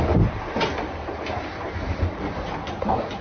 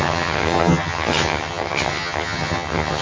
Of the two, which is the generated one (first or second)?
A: second